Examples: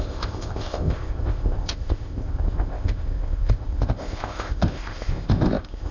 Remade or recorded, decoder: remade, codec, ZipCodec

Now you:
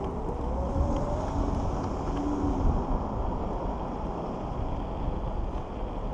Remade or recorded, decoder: recorded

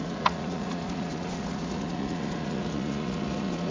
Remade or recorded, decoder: remade, vocoder, Vocos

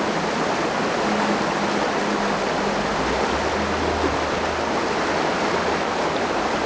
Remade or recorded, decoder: recorded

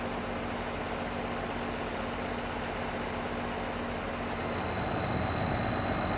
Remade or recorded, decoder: recorded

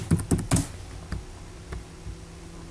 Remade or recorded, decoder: recorded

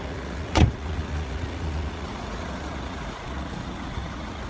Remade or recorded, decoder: remade, vocoder, Vocos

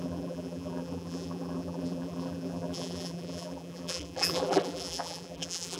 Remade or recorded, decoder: remade, vocoder, BigVGAN v2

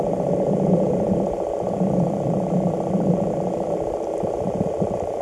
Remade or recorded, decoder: recorded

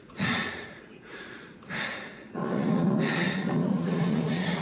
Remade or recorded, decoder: remade, vocoder, Vocos